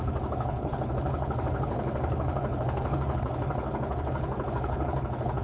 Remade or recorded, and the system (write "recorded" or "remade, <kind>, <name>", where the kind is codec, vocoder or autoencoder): remade, codec, HILCodec